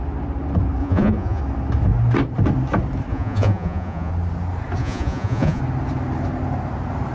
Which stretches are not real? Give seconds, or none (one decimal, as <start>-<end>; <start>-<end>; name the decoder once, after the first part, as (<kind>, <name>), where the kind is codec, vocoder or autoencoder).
0.8-1.4 (vocoder, Vocos); 3.1-4.1; 4.8-5.6